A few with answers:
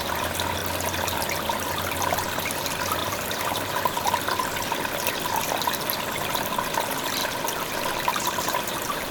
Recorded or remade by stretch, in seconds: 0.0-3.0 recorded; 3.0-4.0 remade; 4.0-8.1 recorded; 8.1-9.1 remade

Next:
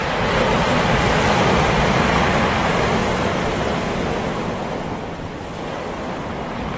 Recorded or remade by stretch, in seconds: 0.0-6.8 recorded

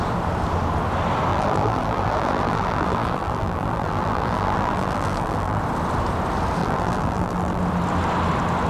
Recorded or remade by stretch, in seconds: 0.0-1.3 recorded; 1.3-5.6 remade; 5.6-6.6 recorded; 6.6-7.6 remade; 7.6-8.7 recorded

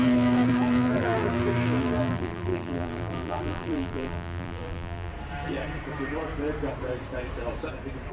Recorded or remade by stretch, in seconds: 0.0-5.1 remade; 5.1-8.1 recorded

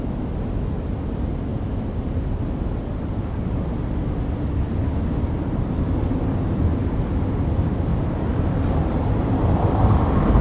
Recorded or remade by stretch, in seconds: 0.0-2.9 recorded; 2.9-4.0 remade; 4.0-7.9 recorded; 7.9-10.0 remade; 10.0-10.4 recorded

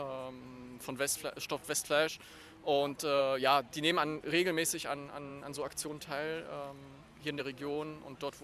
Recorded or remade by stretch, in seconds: 0.0-1.6 recorded; 1.6-3.2 remade; 3.2-8.4 recorded

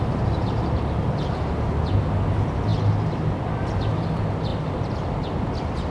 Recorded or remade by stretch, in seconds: 0.0-2.7 recorded; 2.7-3.7 remade; 3.7-4.5 recorded; 4.5-5.4 remade; 5.4-5.9 recorded